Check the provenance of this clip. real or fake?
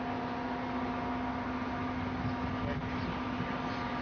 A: real